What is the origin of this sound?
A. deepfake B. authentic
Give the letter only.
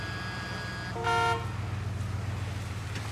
B